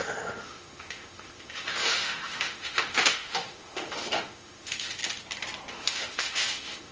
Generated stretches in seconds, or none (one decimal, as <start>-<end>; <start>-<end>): 0.0-5.0; 5.7-6.9